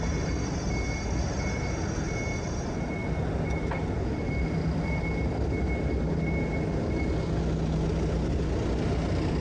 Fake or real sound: real